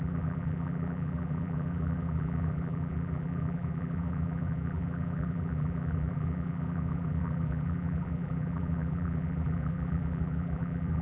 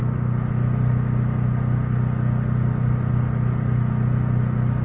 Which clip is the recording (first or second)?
second